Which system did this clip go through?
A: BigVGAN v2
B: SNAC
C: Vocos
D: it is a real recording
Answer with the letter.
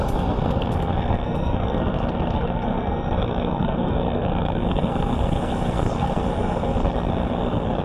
B